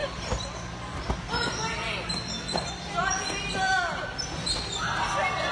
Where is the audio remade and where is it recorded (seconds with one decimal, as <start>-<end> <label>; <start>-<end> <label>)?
0.0-5.5 recorded